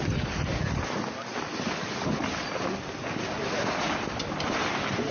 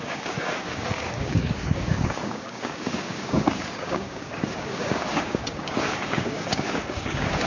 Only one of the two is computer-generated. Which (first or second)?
second